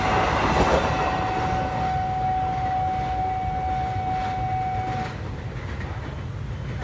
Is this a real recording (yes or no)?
yes